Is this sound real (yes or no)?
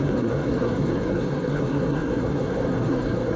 no